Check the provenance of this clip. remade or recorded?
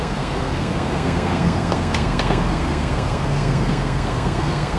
remade